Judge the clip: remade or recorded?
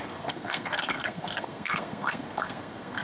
remade